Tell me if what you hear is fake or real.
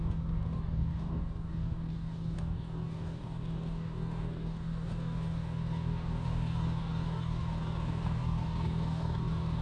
fake